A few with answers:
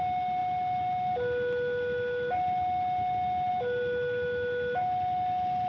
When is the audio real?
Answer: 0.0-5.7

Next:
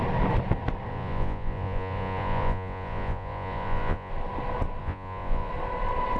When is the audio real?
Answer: 0.0-0.9; 4.1-4.8; 5.5-6.2

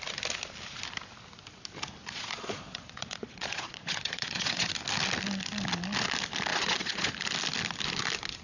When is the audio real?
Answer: 0.0-2.0; 4.7-6.5; 7.1-8.4

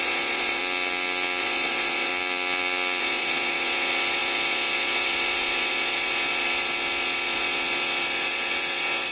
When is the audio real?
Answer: 0.6-1.4; 2.1-3.0

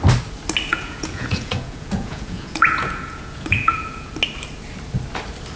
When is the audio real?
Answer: 0.0-0.7; 4.1-5.6

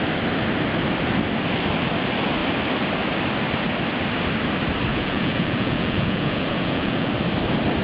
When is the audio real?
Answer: 0.0-4.9; 7.1-7.8

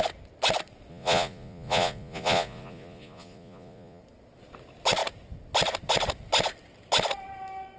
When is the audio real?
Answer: 0.0-0.9; 4.0-7.8

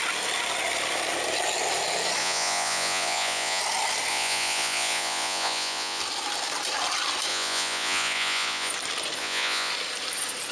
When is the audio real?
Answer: 0.0-2.2; 3.6-4.1; 6.0-7.3; 8.7-9.2; 9.7-10.5